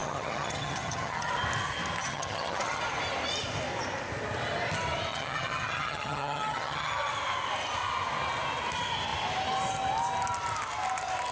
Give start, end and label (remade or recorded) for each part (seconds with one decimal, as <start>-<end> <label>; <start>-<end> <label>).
0.0-1.3 remade; 1.3-2.0 recorded; 2.0-2.8 remade; 2.8-5.1 recorded; 5.1-7.1 remade; 7.1-11.3 recorded